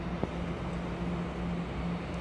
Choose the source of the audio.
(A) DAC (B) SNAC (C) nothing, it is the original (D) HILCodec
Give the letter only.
C